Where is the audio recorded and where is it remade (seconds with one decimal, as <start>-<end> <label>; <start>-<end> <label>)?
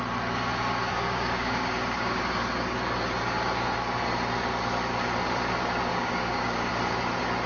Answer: 0.0-0.9 recorded; 0.9-2.2 remade; 2.2-5.9 recorded; 5.9-6.7 remade; 6.7-7.5 recorded